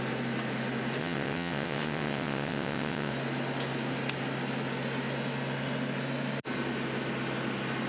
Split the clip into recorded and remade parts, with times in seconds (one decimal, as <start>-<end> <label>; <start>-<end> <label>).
0.0-1.0 recorded; 1.0-3.1 remade; 3.1-7.9 recorded